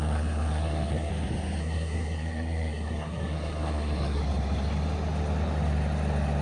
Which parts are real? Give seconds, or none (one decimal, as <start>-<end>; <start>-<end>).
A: 1.1-1.6; 4.2-6.4